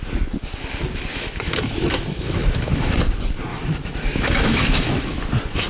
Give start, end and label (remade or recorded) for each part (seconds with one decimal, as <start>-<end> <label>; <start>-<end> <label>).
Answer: 0.0-1.1 recorded; 1.1-3.0 remade; 3.0-3.5 recorded; 3.5-5.2 remade; 5.2-5.7 recorded